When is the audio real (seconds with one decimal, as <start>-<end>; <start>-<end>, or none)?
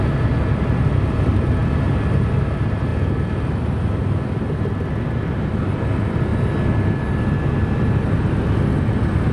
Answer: 0.0-9.3